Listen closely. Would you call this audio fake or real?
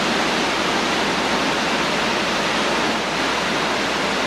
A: real